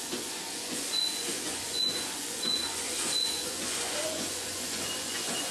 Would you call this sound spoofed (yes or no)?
yes